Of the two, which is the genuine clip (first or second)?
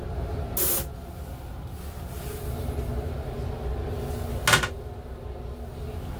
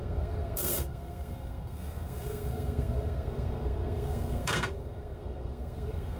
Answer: first